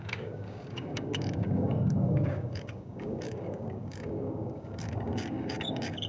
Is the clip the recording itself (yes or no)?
no